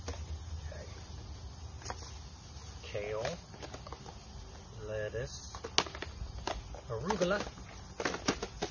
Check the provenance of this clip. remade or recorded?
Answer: recorded